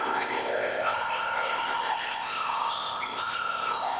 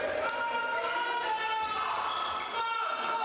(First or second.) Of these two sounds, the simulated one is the first